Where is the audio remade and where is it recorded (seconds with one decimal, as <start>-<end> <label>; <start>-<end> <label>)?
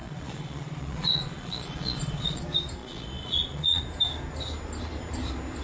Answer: 0.0-2.4 remade; 2.4-2.8 recorded; 2.8-3.8 remade; 3.8-5.6 recorded